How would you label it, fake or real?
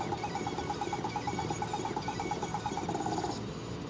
real